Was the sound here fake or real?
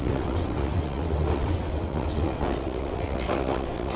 fake